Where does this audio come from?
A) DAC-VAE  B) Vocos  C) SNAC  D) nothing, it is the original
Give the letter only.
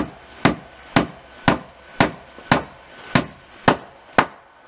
D